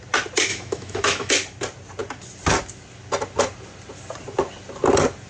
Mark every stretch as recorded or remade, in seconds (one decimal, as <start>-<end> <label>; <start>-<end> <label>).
0.0-0.5 recorded; 0.5-1.3 remade; 1.3-5.3 recorded